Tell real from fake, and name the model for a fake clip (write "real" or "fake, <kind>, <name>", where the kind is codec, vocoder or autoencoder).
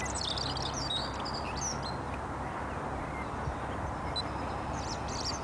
real